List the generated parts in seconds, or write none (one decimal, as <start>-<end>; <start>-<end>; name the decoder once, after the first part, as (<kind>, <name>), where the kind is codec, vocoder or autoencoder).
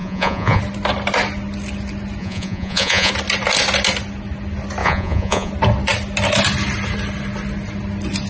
0.0-0.6 (vocoder, Vocos); 2.2-3.1; 4.8-5.5